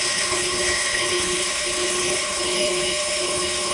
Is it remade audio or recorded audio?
remade